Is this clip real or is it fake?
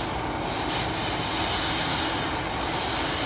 real